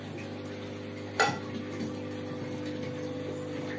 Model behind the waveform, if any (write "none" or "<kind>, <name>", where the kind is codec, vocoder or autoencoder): none